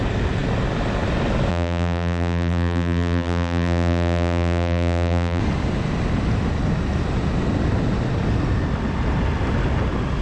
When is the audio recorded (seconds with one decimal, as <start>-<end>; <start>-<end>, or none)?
0.0-1.5; 5.4-10.2